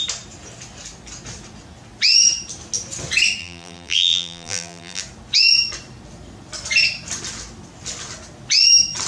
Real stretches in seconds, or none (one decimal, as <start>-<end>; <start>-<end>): 0.0-3.4; 5.0-9.1